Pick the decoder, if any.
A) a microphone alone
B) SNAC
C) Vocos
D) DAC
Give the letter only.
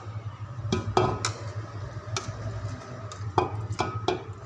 A